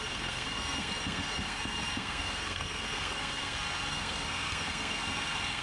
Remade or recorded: remade